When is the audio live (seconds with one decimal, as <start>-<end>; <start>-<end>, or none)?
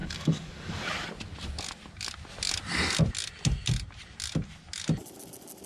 0.8-5.7